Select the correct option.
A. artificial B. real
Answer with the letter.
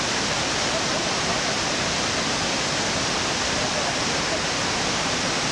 B